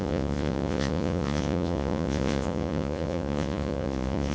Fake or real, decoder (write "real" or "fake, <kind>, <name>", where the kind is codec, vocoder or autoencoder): fake, vocoder, Vocos